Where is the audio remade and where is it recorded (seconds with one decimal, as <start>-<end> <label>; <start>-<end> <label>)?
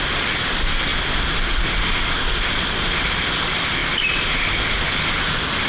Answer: 0.0-5.7 recorded